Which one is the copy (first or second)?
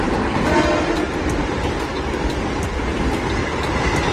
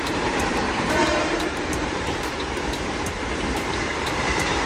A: second